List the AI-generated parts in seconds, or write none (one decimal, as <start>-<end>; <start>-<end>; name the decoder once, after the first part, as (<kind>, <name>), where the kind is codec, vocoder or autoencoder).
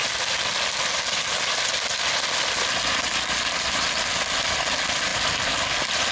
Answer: none